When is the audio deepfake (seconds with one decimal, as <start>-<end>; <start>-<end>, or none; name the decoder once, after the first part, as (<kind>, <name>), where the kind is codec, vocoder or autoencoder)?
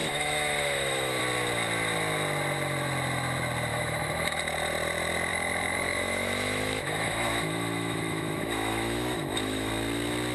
0.0-1.2 (autoencoder, DAC-VAE); 3.7-4.4; 5.3-9.7